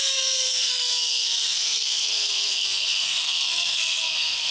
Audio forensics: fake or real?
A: fake